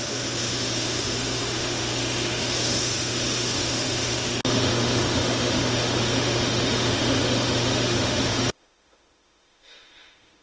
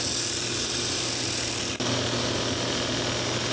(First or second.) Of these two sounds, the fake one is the first